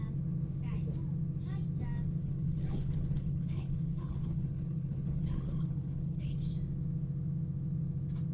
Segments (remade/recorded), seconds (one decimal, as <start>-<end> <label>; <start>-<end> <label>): 0.0-2.2 recorded; 2.2-6.5 remade; 6.5-8.3 recorded